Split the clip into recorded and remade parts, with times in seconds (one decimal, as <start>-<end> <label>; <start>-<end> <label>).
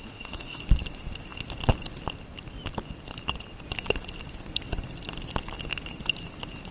0.0-0.6 remade; 0.6-6.7 recorded